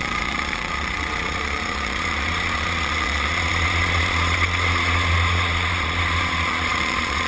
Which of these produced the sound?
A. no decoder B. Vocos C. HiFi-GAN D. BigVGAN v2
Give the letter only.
B